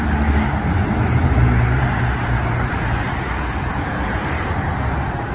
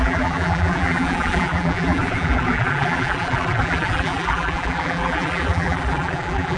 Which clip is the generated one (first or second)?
second